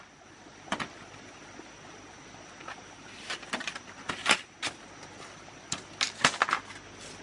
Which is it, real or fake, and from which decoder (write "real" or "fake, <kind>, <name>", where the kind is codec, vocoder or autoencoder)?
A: real